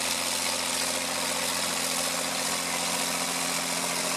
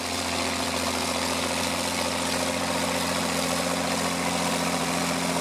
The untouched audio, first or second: first